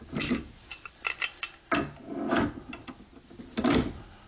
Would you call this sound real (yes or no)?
yes